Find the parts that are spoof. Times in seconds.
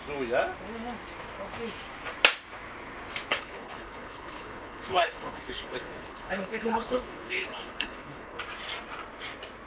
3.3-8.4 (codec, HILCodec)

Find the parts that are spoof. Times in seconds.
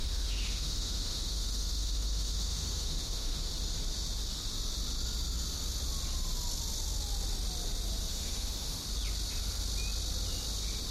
0.0-3.5 (autoencoder, DAC-VAE); 8.1-8.8